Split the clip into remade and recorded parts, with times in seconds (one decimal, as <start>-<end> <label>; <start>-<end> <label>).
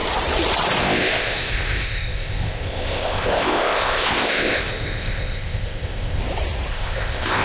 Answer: 0.0-0.8 recorded; 0.8-6.2 remade; 6.2-6.7 recorded; 6.7-7.4 remade